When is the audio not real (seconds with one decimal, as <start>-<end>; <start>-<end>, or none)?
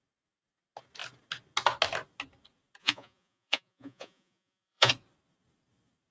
2.8-4.9